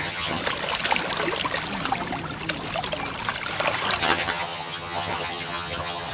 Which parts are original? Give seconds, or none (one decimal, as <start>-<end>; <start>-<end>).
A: 0.4-4.0